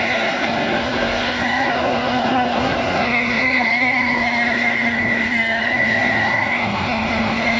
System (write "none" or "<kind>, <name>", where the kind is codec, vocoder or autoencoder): codec, SNAC